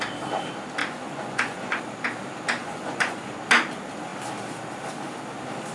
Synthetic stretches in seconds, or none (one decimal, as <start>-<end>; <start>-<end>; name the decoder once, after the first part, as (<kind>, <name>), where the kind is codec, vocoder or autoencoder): 0.8-1.8 (vocoder, Vocos); 2.6-3.4